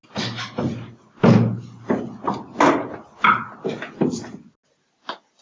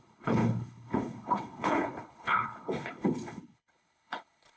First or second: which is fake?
second